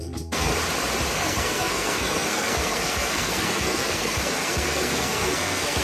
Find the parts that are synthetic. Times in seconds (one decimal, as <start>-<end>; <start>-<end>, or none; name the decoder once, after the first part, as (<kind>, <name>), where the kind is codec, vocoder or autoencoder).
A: 0.0-0.5 (codec, SNAC); 1.1-5.8